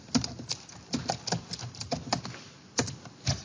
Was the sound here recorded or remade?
recorded